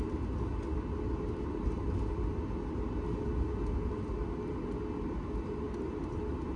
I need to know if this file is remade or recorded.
recorded